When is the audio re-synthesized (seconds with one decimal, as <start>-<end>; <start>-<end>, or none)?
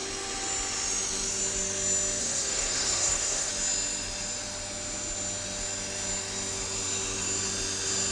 2.2-3.5